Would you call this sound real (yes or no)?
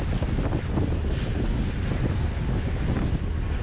yes